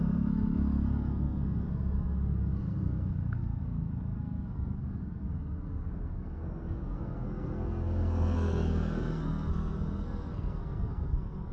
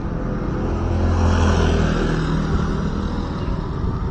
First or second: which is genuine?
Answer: second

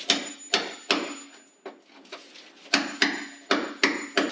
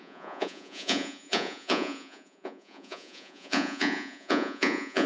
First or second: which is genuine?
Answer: first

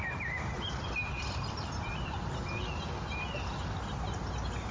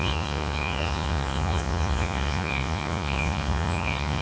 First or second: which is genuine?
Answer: first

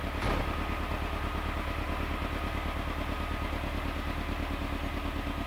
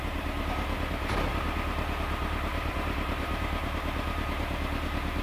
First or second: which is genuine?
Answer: first